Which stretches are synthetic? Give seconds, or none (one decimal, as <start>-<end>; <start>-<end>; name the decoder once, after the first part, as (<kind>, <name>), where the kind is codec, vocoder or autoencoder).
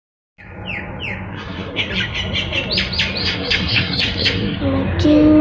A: 1.3-1.9 (codec, SNAC); 3.2-4.6